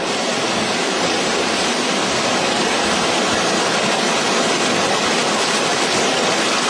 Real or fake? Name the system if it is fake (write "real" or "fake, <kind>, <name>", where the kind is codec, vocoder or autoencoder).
real